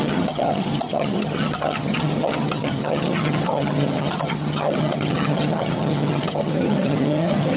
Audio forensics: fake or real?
fake